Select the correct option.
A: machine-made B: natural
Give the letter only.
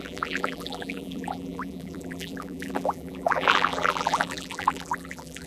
A